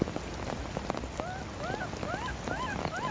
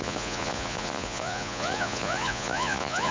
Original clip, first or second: first